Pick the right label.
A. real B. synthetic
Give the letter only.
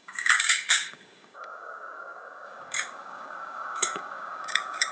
B